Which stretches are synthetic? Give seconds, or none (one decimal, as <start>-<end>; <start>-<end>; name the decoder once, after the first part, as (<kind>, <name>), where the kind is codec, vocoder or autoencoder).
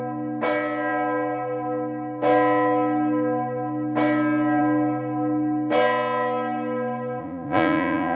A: 7.2-8.2 (vocoder, Vocos)